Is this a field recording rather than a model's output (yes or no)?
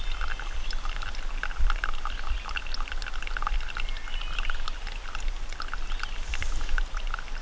yes